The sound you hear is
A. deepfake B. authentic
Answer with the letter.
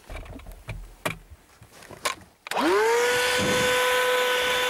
B